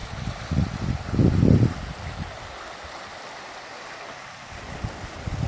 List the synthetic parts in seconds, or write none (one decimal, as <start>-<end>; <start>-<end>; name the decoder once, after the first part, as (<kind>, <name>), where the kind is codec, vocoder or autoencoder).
none